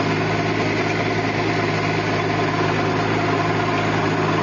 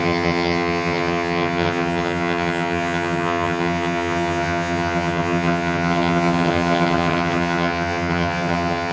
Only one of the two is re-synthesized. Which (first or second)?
second